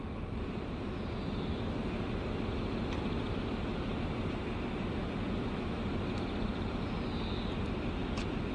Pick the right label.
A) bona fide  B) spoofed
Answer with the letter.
A